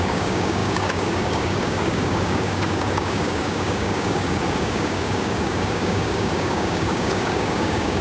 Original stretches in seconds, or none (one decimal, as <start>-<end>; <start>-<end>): none

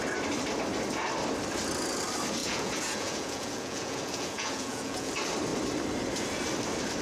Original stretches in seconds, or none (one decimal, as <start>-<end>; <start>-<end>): 0.0-2.4; 5.1-7.0

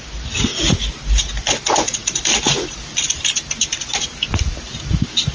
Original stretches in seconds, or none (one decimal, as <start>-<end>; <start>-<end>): 0.0-5.3

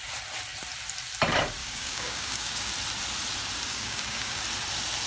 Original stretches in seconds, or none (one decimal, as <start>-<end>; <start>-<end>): 0.0-1.6; 2.7-3.7; 4.4-5.1

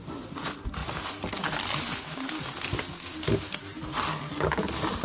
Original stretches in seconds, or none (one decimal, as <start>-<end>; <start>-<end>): 0.0-5.0

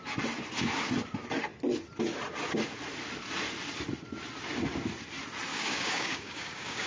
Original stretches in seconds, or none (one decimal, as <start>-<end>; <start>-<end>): 0.0-5.5

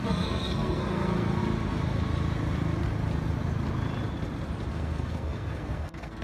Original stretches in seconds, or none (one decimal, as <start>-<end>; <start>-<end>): 1.4-4.7